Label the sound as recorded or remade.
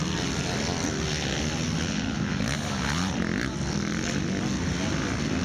recorded